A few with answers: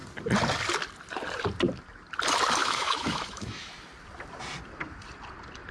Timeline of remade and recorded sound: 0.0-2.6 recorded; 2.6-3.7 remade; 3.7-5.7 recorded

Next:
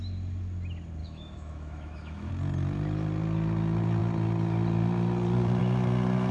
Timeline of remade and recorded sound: 0.0-1.0 recorded; 1.0-2.3 remade; 2.3-6.3 recorded